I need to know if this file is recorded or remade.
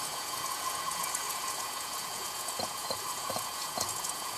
remade